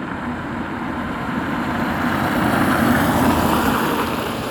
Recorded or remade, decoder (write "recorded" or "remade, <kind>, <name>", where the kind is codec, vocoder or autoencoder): remade, vocoder, BigVGAN v2